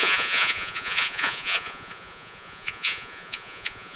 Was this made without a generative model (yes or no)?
no